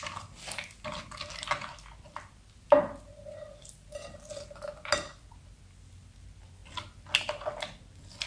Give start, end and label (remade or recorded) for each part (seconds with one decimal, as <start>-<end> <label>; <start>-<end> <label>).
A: 0.0-8.3 recorded